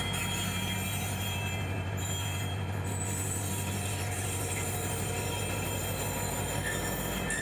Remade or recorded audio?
recorded